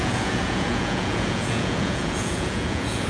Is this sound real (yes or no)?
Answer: no